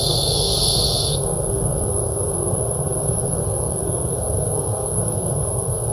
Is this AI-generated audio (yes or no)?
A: yes